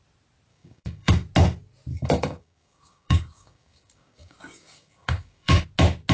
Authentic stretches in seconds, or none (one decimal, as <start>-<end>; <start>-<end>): 0.0-0.5; 1.1-1.9; 5.6-6.1